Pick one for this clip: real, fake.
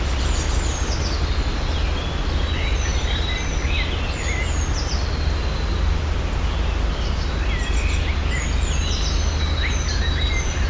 real